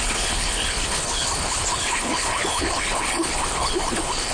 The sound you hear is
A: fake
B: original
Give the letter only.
A